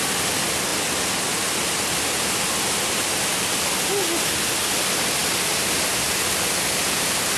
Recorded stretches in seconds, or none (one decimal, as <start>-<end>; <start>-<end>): 0.0-7.4